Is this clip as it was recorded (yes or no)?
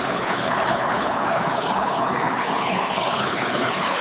no